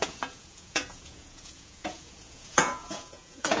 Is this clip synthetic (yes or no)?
yes